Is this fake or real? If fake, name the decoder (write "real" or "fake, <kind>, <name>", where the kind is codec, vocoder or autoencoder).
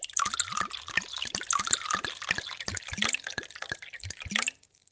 real